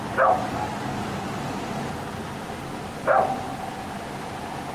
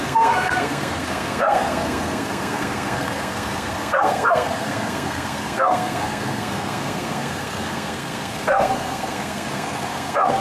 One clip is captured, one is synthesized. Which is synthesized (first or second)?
second